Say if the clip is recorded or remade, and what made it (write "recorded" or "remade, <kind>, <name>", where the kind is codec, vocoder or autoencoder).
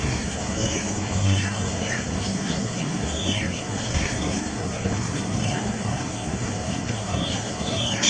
remade, codec, SNAC